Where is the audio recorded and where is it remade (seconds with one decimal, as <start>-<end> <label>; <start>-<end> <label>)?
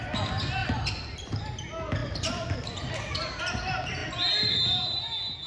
0.0-0.6 recorded; 0.6-1.4 remade; 1.4-2.0 recorded; 2.0-3.1 remade; 3.1-5.5 recorded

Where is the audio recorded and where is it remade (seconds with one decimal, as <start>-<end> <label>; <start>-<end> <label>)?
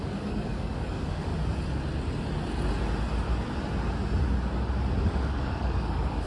0.0-1.3 remade; 1.3-5.0 recorded; 5.0-6.3 remade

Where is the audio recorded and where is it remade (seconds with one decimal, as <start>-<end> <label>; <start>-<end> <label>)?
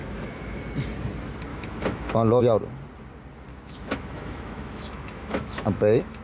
0.0-0.6 remade; 0.6-1.5 recorded; 1.5-2.4 remade; 2.4-3.5 recorded; 3.5-6.2 remade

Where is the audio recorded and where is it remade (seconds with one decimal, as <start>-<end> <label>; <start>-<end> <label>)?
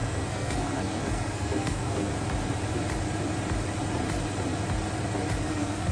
0.0-2.1 remade; 2.1-5.4 recorded; 5.4-5.9 remade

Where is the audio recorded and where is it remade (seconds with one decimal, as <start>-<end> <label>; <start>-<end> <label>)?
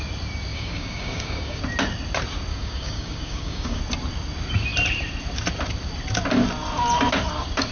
0.0-0.5 recorded; 0.5-1.6 remade; 1.6-2.5 recorded; 2.5-3.8 remade; 3.8-7.7 recorded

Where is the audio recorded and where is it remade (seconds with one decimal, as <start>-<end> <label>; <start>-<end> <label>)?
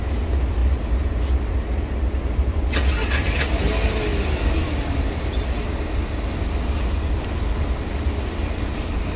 0.0-9.2 recorded